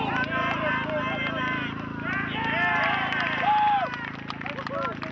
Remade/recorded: recorded